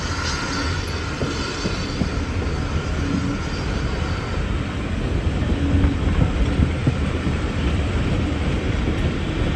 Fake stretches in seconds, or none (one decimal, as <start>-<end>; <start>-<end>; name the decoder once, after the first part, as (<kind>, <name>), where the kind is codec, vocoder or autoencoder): 6.8-8.8 (vocoder, BigVGAN v2)